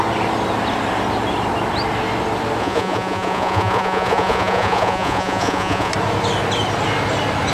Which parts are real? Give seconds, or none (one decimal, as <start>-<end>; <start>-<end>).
0.0-2.6; 5.9-7.5